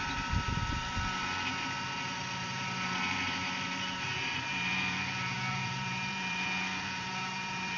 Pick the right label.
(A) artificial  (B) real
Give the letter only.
A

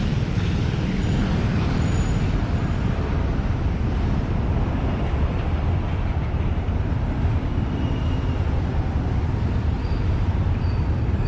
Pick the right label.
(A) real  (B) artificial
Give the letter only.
B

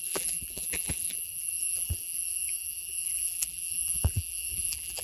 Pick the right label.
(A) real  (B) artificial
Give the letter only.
B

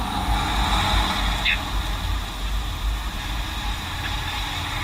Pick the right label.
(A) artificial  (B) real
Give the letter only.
B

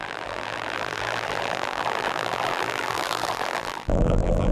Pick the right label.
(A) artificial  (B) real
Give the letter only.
A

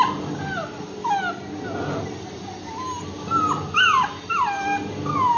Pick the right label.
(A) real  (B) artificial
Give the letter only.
A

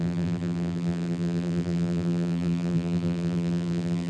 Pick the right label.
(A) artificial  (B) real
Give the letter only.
A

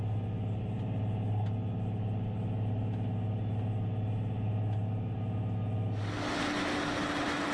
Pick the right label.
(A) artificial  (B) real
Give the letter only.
B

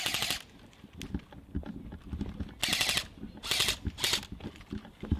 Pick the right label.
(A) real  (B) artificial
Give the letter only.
A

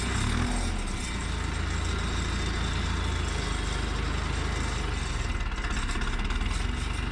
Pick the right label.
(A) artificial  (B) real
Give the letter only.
B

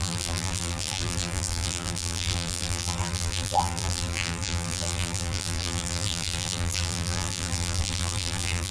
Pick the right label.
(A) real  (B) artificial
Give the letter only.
B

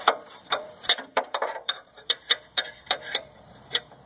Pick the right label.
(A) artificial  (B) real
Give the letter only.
A